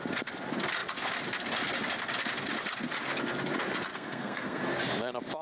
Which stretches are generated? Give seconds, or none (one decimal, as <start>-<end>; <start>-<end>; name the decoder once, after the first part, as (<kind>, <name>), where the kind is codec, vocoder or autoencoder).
3.9-4.6 (codec, SNAC)